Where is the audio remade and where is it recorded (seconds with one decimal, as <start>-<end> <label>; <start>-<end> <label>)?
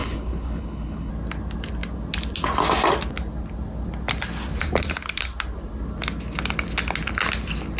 0.0-1.1 remade; 1.1-7.8 recorded